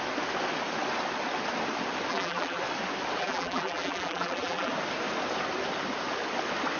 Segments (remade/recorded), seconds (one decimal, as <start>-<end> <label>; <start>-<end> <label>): 0.0-2.1 recorded; 2.1-2.6 remade; 2.6-3.2 recorded; 3.2-4.7 remade; 4.7-6.8 recorded